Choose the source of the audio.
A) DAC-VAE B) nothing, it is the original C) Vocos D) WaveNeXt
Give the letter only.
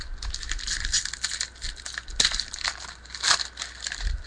B